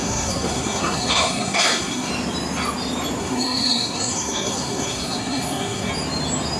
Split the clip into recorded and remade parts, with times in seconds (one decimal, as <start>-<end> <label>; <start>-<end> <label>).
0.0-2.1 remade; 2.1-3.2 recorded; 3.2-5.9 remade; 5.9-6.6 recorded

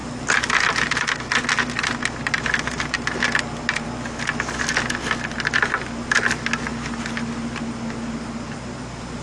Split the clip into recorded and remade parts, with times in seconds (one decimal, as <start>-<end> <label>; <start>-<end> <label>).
0.0-9.2 recorded

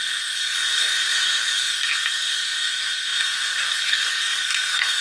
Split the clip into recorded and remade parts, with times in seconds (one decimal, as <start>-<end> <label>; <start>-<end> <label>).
0.0-5.0 remade

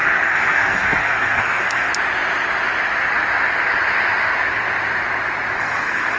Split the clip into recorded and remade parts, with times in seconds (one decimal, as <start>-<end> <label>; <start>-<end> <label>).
0.0-1.9 remade; 1.9-5.6 recorded; 5.6-6.2 remade